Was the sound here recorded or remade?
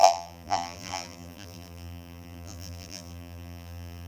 remade